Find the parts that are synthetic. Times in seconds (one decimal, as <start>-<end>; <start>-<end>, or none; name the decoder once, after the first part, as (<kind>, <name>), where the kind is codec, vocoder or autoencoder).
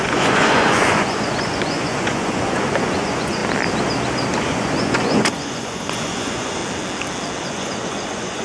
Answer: 0.0-3.4 (vocoder, Vocos); 4.4-6.6; 7.4-8.4